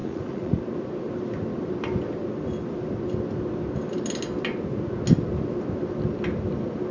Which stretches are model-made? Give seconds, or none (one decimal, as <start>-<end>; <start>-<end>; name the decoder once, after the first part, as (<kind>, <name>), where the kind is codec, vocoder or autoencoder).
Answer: 0.0-0.6 (vocoder, Vocos)